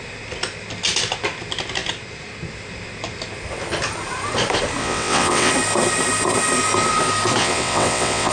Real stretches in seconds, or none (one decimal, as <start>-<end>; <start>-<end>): 0.0-4.8; 5.5-7.4

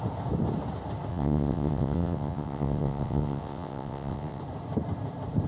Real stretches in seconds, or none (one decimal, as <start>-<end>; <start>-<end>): 0.0-1.1; 4.4-5.5

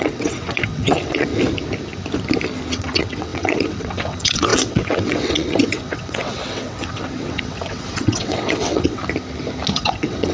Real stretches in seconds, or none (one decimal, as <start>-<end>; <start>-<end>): 1.3-2.7; 9.0-9.7

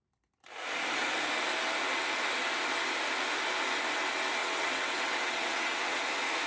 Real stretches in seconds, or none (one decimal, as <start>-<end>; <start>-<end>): 0.0-4.4; 6.0-6.5

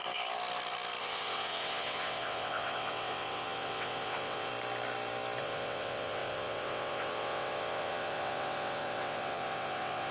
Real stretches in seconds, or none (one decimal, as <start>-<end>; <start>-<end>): 0.0-1.0; 4.5-5.4